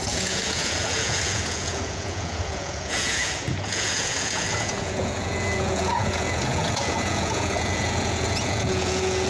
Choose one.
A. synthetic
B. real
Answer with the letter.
A